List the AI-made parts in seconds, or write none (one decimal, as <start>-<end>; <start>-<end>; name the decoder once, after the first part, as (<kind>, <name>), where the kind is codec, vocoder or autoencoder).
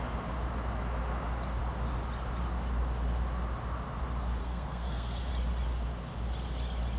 4.4-5.3 (codec, SNAC)